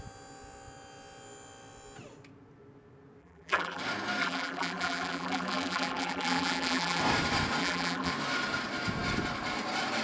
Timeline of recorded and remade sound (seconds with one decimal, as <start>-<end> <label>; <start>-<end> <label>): 0.0-3.2 recorded; 3.2-3.8 remade; 3.8-4.2 recorded; 4.2-7.0 remade; 7.0-7.6 recorded; 7.6-8.1 remade; 8.1-10.0 recorded